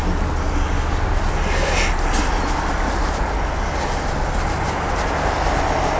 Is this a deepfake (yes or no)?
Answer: no